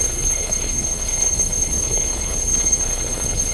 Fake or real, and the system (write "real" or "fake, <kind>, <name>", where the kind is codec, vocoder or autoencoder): fake, codec, HILCodec